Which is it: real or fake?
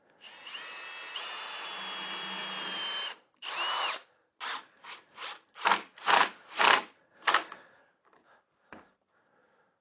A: real